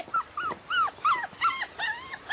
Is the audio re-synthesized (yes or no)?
no